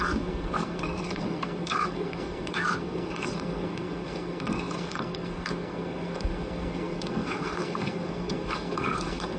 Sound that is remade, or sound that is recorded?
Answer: remade